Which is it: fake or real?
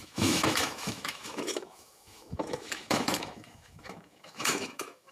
fake